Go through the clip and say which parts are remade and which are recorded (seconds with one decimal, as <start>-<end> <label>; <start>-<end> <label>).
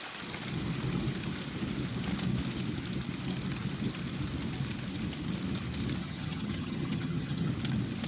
0.0-6.0 recorded; 6.0-7.5 remade; 7.5-8.1 recorded